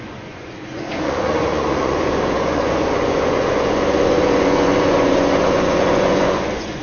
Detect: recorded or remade remade